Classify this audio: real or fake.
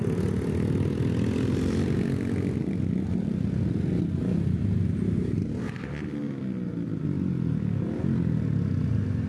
real